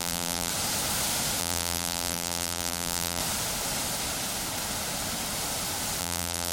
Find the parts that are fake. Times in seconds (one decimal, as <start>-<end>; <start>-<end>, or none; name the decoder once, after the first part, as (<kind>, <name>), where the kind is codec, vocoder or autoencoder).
0.0-0.5 (vocoder, BigVGAN v2); 1.4-3.2; 6.0-6.5